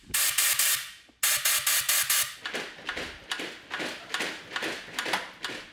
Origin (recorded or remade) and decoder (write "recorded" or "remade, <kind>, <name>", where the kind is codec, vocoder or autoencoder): recorded